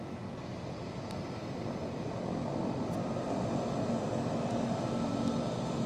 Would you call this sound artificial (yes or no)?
no